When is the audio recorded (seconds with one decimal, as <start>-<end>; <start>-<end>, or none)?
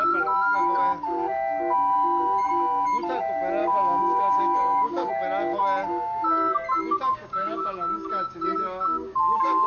0.0-3.6; 5.1-7.1